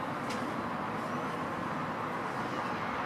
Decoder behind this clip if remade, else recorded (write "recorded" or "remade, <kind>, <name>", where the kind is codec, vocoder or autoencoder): recorded